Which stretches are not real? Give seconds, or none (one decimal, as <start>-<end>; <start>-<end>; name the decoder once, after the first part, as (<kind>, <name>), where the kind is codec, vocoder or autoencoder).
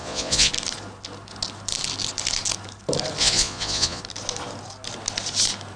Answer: 0.0-0.5 (vocoder, Vocos); 3.2-4.0